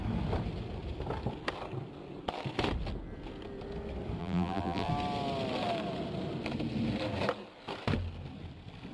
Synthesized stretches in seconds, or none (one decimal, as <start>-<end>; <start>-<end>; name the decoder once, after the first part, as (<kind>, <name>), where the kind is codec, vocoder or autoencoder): 4.2-4.9 (vocoder, BigVGAN v2)